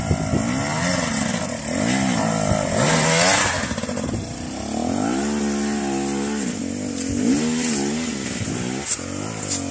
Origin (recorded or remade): recorded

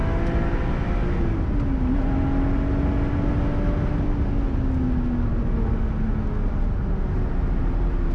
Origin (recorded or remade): recorded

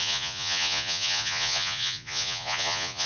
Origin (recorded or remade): remade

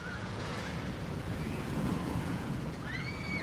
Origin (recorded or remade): remade